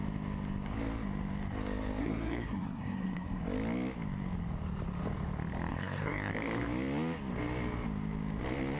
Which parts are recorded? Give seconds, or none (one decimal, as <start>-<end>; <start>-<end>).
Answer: 0.0-2.0; 3.4-5.7; 6.3-8.8